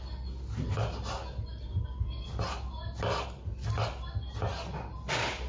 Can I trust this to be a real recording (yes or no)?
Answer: yes